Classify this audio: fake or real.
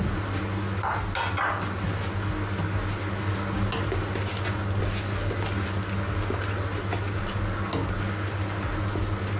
real